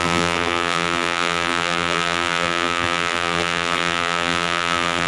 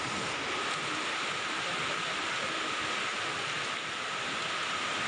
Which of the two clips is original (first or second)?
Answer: second